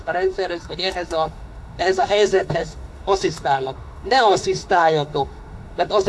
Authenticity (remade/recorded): remade